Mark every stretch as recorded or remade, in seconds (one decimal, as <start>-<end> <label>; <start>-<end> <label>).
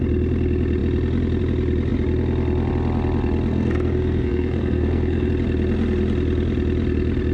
0.0-3.5 recorded; 3.5-5.3 remade; 5.3-7.3 recorded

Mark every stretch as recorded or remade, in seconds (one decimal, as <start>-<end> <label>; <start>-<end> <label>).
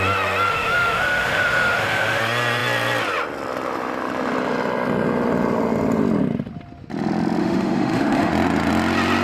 0.0-0.5 recorded; 0.5-2.2 remade; 2.2-7.4 recorded; 7.4-8.3 remade; 8.3-9.2 recorded